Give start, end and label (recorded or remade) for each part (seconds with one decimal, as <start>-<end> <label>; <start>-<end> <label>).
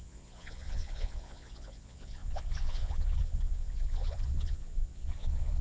0.0-5.6 remade